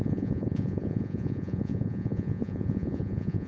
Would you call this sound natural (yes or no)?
no